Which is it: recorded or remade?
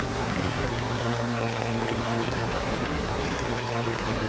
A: remade